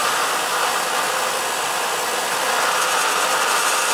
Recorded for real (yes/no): yes